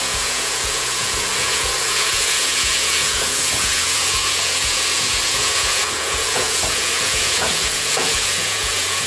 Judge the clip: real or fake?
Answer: fake